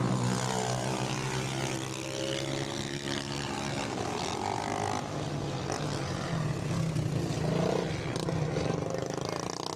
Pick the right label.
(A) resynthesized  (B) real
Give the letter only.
B